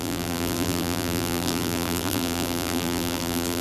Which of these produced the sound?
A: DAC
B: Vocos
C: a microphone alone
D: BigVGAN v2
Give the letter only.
D